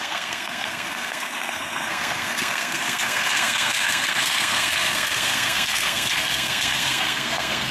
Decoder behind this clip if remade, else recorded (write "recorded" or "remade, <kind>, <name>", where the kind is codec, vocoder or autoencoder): remade, codec, SNAC